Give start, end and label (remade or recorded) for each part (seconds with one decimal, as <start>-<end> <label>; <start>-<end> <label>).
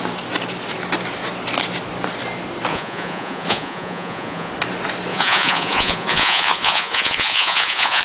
0.0-2.7 recorded; 2.7-4.5 remade; 4.5-5.1 recorded; 5.1-8.0 remade